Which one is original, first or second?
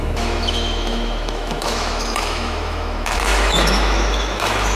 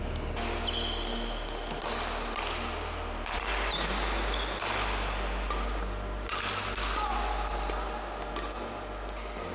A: second